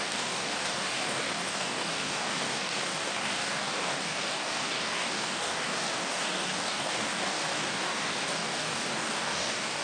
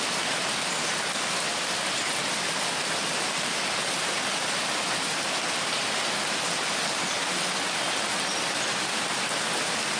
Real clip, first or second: second